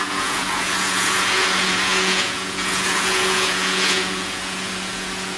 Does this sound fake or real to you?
fake